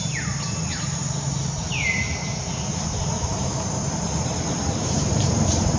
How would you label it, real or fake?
fake